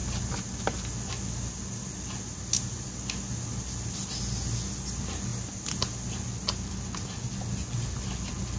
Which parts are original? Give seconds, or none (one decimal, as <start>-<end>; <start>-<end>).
0.0-8.6